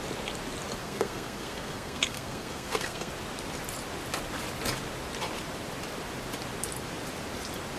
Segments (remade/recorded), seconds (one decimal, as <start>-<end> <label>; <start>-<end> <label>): 0.0-0.8 recorded; 0.8-3.1 remade; 3.1-7.8 recorded